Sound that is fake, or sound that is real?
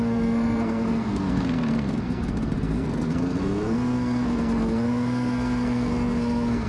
fake